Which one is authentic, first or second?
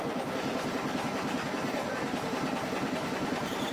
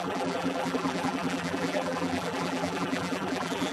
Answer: first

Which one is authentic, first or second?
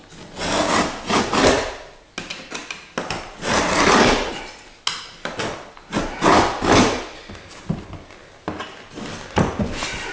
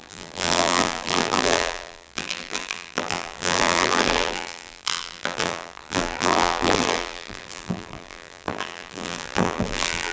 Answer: first